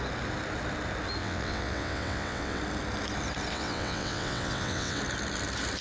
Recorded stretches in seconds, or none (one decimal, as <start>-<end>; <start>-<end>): 0.0-1.2; 2.6-3.5; 5.0-5.8